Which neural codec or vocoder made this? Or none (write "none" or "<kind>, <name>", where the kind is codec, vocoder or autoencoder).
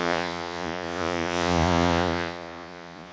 vocoder, Vocos